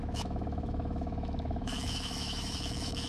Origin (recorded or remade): remade